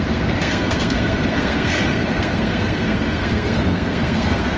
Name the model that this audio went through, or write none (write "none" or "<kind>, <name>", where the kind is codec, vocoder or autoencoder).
codec, SNAC